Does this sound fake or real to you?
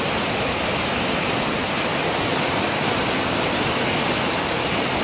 real